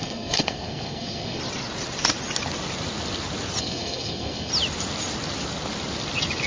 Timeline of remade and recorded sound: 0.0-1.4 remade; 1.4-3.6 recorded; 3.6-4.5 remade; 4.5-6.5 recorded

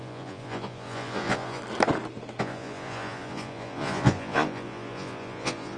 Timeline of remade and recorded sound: 0.0-1.6 remade; 1.6-2.4 recorded; 2.4-5.8 remade

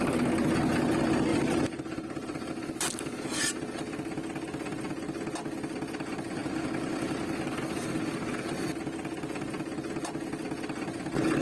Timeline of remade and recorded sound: 0.0-1.3 recorded; 1.3-2.5 remade; 2.5-11.4 recorded

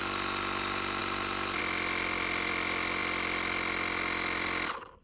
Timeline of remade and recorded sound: 0.0-5.0 recorded

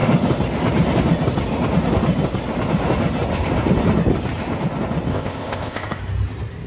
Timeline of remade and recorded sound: 0.0-5.1 recorded; 5.1-6.0 remade; 6.0-6.7 recorded

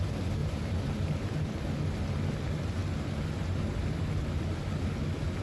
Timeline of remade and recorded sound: 0.0-0.4 recorded; 0.4-1.6 remade; 1.6-5.4 recorded

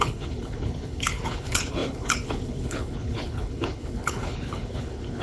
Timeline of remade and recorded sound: 0.0-5.2 remade